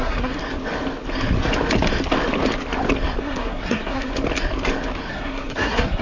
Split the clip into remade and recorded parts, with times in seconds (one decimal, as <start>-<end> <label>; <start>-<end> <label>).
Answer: 0.0-0.4 remade; 0.4-3.2 recorded; 3.2-4.1 remade; 4.1-5.1 recorded; 5.1-6.0 remade